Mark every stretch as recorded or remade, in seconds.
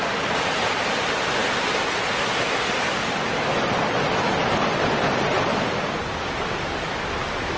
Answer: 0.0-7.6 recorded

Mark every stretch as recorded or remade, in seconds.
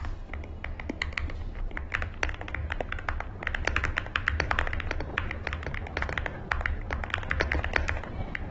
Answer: 0.0-8.5 recorded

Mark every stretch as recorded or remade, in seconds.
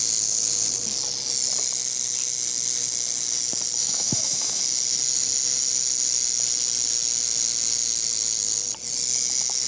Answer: 0.0-3.8 recorded; 3.8-4.6 remade; 4.6-9.7 recorded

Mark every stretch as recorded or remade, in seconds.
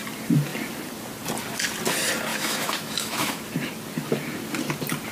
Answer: 0.0-2.3 recorded; 2.3-3.4 remade; 3.4-5.1 recorded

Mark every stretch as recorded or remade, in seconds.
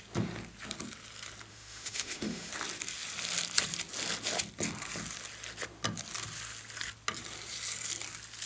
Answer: 0.0-1.5 recorded; 1.5-2.5 remade; 2.5-8.5 recorded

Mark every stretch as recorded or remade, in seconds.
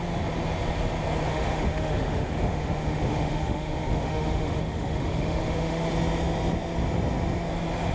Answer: 0.0-1.3 recorded; 1.3-5.9 remade; 5.9-7.9 recorded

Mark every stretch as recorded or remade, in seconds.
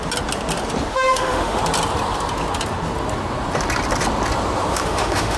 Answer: 0.0-0.9 recorded; 0.9-1.6 remade; 1.6-4.7 recorded; 4.7-5.4 remade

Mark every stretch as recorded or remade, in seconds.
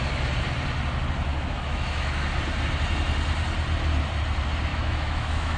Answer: 0.0-1.3 recorded; 1.3-2.2 remade; 2.2-4.7 recorded; 4.7-5.6 remade